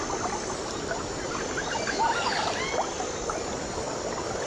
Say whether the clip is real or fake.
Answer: real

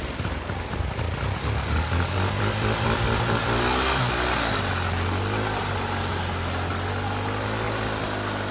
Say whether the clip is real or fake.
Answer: real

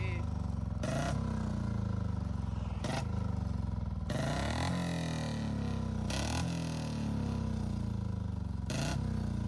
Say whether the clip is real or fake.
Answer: real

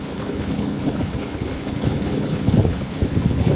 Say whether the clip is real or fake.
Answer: fake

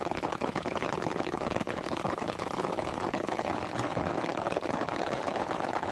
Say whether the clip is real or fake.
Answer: fake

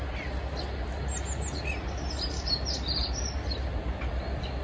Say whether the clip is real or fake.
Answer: real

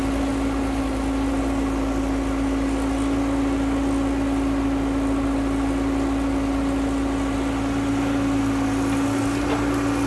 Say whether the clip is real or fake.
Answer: real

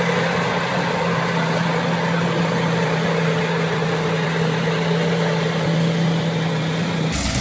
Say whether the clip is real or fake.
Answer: real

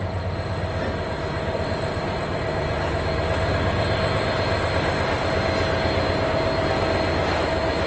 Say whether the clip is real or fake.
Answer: real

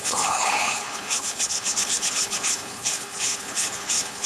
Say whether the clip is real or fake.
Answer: fake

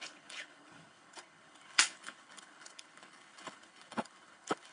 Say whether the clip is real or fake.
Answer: fake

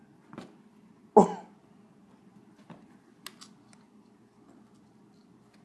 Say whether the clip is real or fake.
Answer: real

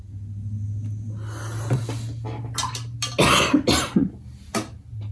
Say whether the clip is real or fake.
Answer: real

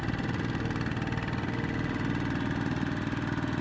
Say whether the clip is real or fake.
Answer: real